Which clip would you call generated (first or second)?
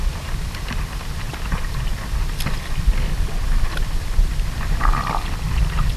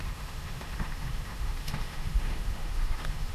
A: second